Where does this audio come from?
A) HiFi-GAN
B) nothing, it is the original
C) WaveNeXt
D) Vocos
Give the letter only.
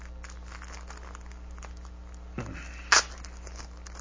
B